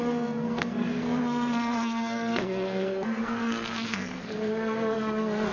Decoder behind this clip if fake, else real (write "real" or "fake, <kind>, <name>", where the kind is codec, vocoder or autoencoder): fake, codec, SNAC